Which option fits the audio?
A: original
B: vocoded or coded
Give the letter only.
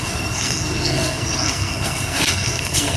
B